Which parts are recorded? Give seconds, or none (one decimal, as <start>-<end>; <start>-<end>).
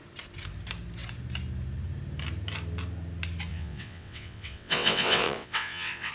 0.0-3.5